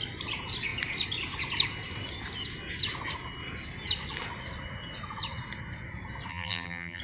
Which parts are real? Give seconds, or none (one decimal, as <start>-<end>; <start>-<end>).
0.0-6.3